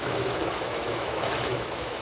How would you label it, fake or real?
fake